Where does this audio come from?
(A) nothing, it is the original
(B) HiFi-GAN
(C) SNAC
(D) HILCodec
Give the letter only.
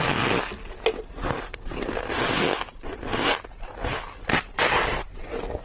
A